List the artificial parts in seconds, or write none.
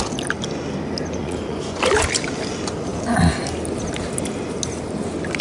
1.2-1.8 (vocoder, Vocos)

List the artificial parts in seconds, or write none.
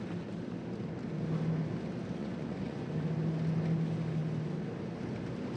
2.2-2.9 (vocoder, Vocos)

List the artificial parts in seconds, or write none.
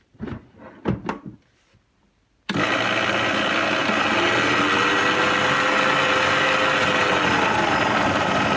none